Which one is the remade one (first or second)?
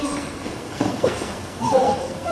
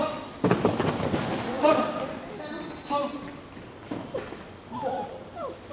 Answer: first